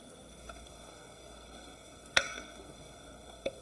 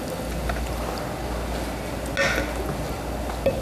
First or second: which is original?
second